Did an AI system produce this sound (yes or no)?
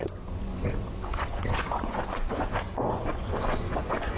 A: yes